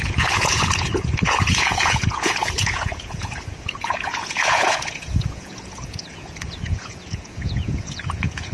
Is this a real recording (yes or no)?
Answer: no